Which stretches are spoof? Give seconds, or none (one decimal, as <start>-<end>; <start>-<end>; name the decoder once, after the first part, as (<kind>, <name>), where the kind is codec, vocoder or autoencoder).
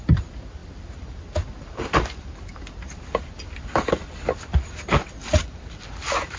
none